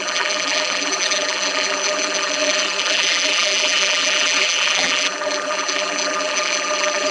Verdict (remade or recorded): remade